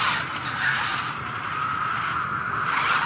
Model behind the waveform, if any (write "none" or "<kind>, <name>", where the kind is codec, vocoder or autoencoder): none